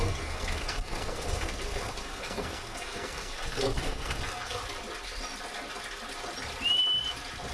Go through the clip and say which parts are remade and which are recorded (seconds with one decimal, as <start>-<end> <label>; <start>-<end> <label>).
0.0-4.6 remade; 4.6-7.5 recorded